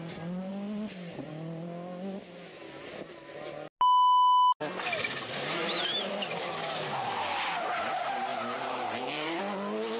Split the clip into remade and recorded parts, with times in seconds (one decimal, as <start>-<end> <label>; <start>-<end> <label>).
0.0-8.3 recorded; 8.3-9.4 remade; 9.4-10.0 recorded